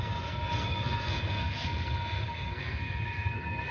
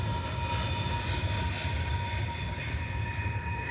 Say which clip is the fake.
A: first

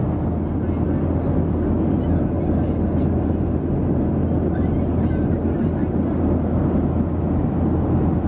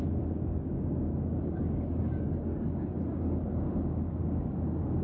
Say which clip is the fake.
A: second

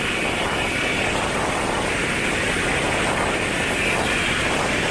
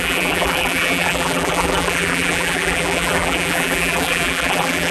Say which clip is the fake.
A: second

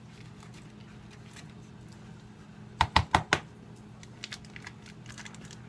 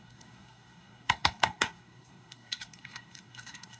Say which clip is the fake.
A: second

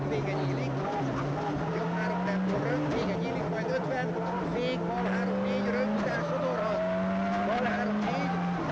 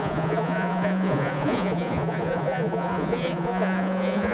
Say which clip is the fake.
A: second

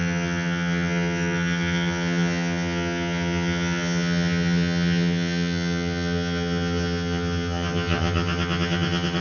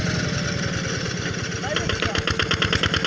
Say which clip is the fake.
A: first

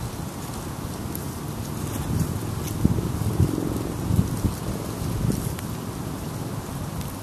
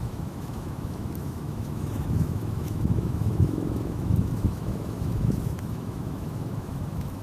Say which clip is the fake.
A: second